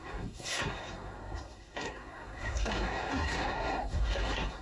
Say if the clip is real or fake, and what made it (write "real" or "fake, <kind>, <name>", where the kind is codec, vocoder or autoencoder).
fake, codec, SNAC